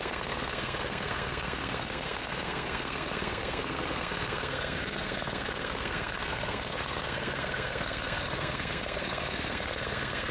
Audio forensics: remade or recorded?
remade